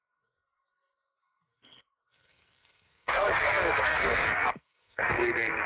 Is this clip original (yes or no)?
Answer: no